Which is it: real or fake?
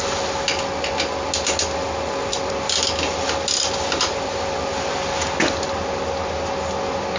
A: real